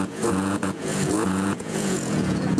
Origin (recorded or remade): remade